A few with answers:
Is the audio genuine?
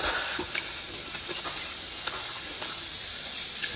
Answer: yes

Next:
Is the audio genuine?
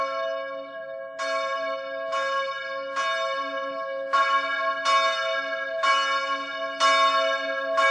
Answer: yes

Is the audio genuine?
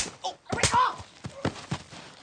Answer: yes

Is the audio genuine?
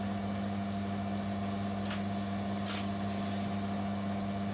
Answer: yes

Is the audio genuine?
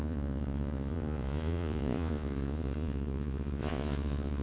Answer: no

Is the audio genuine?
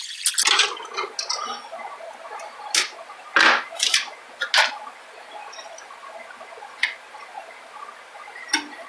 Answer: yes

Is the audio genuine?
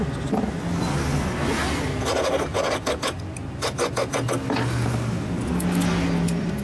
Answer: yes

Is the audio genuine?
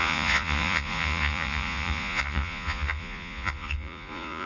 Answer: no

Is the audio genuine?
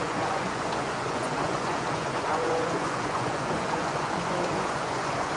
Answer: no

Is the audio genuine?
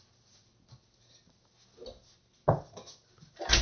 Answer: yes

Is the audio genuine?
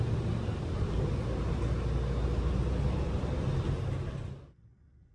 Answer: yes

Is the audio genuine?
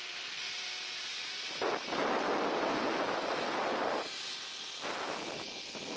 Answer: yes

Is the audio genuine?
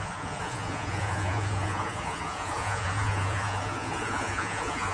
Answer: no